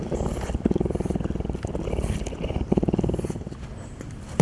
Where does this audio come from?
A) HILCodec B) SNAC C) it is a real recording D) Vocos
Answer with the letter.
C